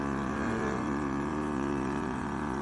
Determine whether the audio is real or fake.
fake